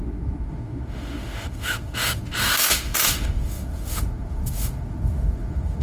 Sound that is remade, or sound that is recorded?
remade